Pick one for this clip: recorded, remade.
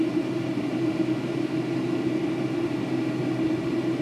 recorded